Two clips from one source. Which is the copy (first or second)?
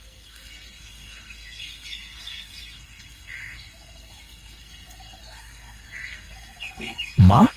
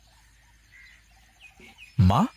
first